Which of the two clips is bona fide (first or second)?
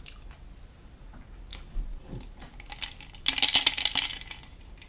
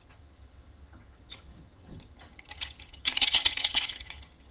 first